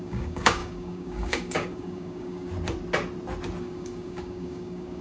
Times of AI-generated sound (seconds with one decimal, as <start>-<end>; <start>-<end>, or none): 0.0-2.5; 3.6-5.0